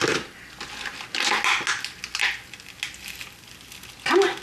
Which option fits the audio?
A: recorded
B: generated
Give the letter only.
A